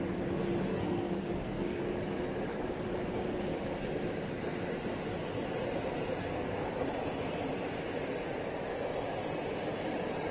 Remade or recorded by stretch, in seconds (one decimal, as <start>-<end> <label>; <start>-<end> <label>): 0.0-0.7 recorded; 0.7-1.8 remade; 1.8-6.2 recorded; 6.2-6.7 remade; 6.7-10.3 recorded